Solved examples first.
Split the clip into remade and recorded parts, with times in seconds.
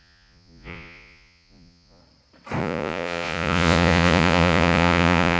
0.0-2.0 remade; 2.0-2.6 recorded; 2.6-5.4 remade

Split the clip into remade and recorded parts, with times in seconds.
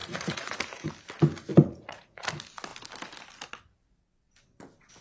0.0-0.9 remade; 0.9-1.5 recorded; 1.5-2.3 remade; 2.3-5.0 recorded